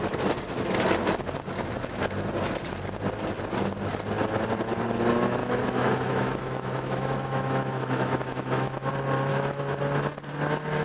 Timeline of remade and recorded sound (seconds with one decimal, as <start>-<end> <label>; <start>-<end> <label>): 0.0-5.4 recorded; 5.4-8.9 remade; 8.9-9.3 recorded; 9.3-9.8 remade; 9.8-10.8 recorded

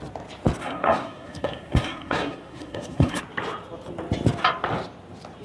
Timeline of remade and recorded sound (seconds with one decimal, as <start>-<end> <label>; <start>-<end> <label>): 0.0-0.6 recorded; 0.6-3.2 remade; 3.2-5.4 recorded

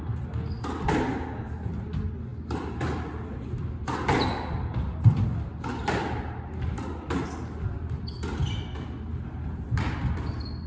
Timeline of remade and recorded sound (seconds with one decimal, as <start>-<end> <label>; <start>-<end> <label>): 0.0-10.7 recorded

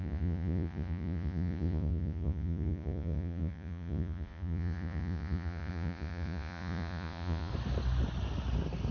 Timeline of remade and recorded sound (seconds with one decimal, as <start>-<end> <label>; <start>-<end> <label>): 0.0-7.5 remade; 7.5-8.9 recorded

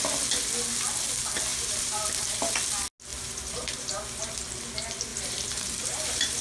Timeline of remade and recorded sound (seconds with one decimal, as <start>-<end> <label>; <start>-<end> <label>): 0.0-1.5 recorded; 1.5-2.5 remade; 2.5-3.1 recorded; 3.1-4.3 remade; 4.3-5.1 recorded; 5.1-6.4 remade